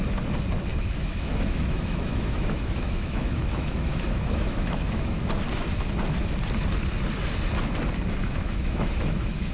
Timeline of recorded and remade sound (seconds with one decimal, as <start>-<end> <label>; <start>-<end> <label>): 0.0-0.7 recorded; 0.7-5.2 remade; 5.2-8.2 recorded; 8.2-9.5 remade